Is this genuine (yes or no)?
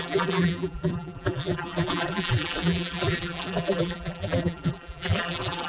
no